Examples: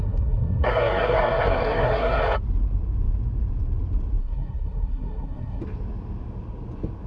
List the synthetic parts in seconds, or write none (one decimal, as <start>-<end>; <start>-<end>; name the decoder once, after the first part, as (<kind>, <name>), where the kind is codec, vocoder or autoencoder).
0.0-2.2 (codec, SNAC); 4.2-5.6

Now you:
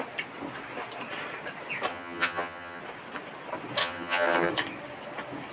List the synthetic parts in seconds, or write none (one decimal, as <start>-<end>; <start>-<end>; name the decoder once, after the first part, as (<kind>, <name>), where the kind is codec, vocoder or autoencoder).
1.9-2.8 (vocoder, HiFi-GAN); 3.8-4.5

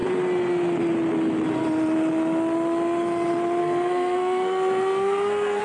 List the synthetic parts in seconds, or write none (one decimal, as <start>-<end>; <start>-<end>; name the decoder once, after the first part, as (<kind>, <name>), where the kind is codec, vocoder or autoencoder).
3.6-5.6 (codec, SNAC)